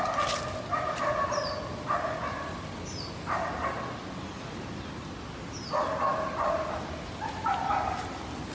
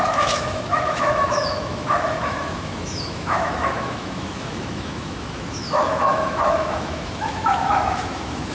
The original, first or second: first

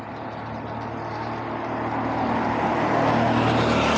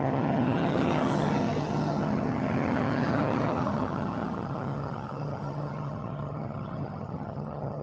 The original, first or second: first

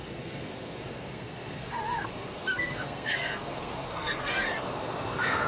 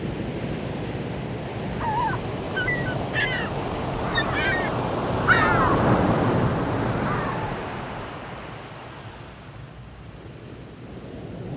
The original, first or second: second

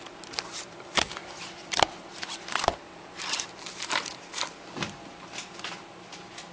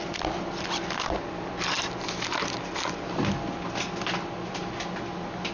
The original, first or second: second